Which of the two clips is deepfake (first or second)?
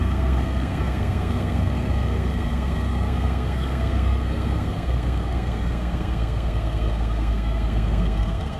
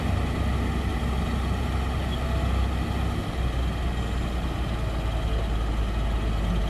first